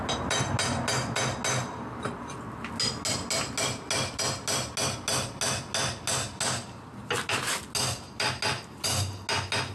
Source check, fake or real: real